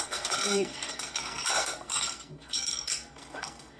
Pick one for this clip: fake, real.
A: fake